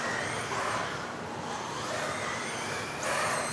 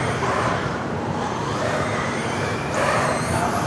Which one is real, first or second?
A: first